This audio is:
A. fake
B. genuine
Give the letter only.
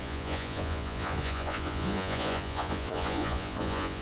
A